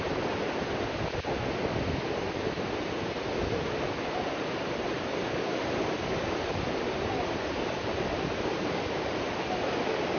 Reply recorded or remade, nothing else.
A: recorded